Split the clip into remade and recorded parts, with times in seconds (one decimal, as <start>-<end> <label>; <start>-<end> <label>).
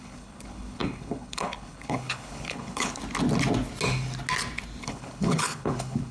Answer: 0.0-3.0 remade; 3.0-4.8 recorded; 4.8-6.1 remade